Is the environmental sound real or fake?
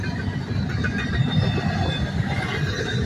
real